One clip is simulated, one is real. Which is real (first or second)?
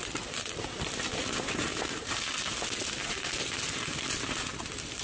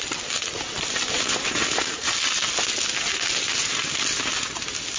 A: second